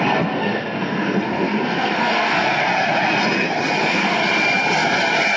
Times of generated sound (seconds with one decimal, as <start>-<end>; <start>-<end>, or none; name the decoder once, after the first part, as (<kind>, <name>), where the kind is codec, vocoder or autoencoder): 0.0-2.6 (codec, SNAC); 3.8-4.2